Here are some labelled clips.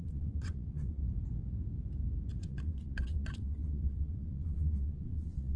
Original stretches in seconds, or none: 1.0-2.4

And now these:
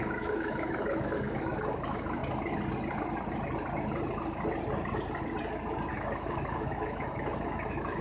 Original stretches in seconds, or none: 2.2-5.9